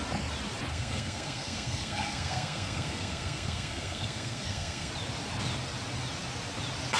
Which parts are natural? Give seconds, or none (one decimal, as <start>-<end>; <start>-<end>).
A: 0.0-0.7; 4.9-7.0